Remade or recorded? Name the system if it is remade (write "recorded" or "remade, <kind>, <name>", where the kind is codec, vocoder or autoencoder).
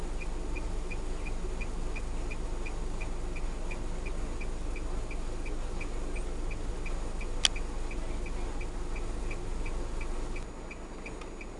recorded